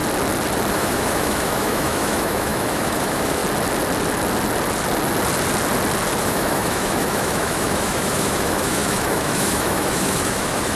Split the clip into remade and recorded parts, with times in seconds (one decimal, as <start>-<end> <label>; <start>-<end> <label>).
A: 0.0-0.7 recorded; 0.7-3.4 remade; 3.4-6.2 recorded; 6.2-10.8 remade

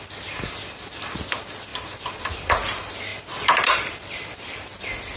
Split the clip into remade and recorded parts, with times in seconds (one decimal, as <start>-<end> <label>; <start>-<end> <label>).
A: 0.0-5.2 recorded